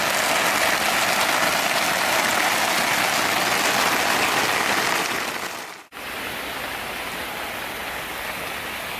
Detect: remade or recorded recorded